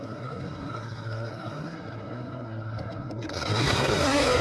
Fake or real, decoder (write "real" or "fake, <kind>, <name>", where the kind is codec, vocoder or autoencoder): fake, codec, SNAC